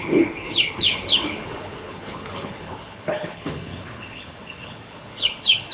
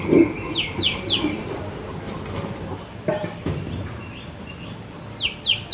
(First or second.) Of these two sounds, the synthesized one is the first